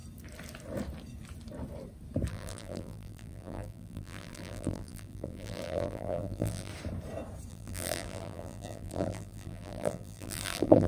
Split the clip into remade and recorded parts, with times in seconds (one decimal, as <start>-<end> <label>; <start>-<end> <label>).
0.0-2.3 recorded; 2.3-6.7 remade; 6.7-7.5 recorded; 7.5-10.9 remade